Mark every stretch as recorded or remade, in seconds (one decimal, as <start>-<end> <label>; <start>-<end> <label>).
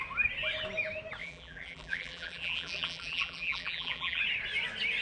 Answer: 0.0-1.2 recorded; 1.2-4.2 remade; 4.2-5.0 recorded